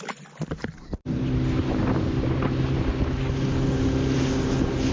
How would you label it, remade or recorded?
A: recorded